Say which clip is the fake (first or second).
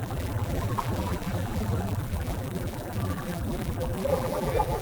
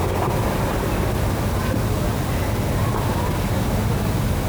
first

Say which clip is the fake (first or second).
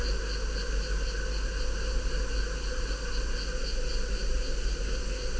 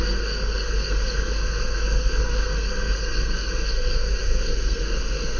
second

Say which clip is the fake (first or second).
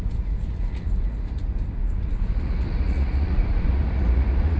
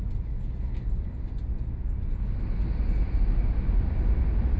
first